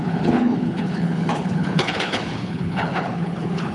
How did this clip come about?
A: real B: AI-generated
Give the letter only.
B